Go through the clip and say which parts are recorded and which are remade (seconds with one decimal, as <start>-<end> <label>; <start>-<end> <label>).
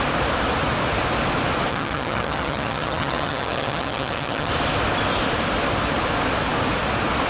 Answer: 0.0-1.7 recorded; 1.7-4.5 remade; 4.5-7.3 recorded